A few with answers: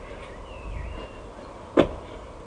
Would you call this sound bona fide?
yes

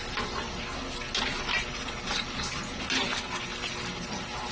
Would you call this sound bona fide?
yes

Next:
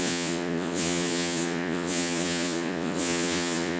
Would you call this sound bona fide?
no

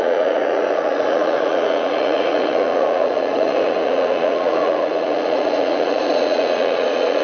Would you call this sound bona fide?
no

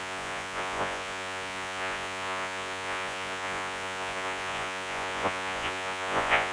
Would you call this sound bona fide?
no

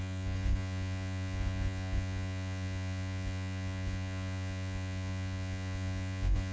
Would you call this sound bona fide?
no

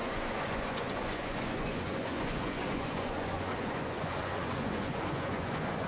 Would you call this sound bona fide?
no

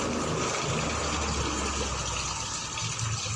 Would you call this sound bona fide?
yes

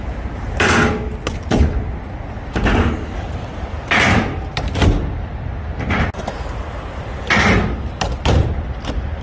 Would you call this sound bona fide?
yes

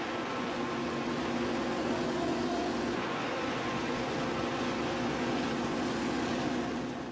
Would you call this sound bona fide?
no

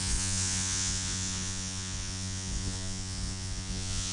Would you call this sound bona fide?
no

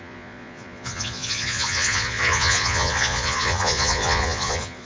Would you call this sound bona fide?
no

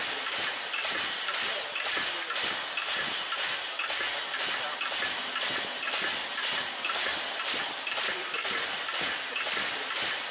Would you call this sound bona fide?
yes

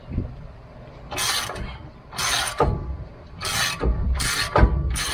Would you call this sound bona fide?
yes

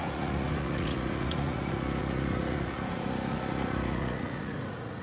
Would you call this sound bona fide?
no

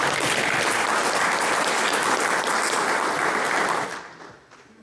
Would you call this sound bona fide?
yes